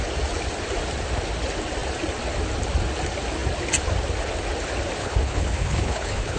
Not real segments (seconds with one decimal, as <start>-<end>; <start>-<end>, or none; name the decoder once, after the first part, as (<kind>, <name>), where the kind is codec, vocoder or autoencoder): 5.0-6.4 (codec, HILCodec)